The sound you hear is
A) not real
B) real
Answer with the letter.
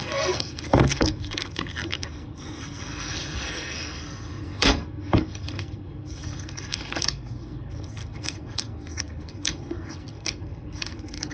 A